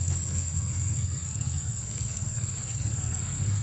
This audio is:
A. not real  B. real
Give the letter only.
A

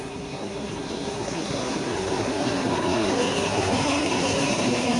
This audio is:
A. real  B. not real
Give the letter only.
B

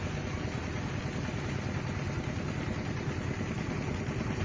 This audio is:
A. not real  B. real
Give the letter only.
B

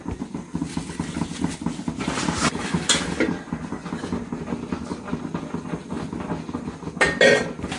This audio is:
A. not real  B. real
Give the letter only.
B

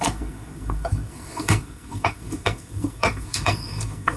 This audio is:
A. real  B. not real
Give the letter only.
B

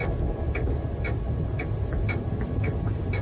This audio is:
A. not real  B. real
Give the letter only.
B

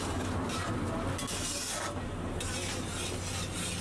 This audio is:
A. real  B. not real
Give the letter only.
A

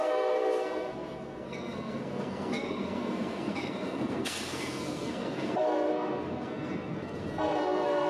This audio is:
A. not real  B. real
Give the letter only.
A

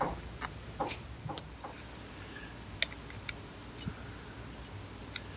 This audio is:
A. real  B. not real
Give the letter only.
A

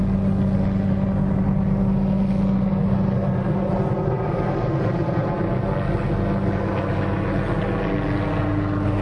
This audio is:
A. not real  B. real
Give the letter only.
B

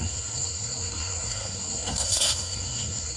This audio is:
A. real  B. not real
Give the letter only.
B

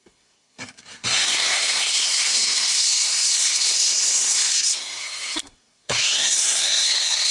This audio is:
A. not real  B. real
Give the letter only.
A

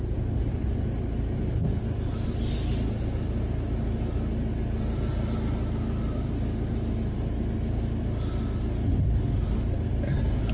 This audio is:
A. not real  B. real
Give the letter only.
B